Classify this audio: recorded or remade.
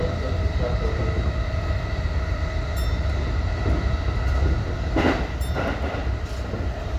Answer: recorded